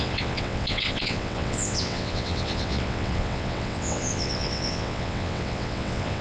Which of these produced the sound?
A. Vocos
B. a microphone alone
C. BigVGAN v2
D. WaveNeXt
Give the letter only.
D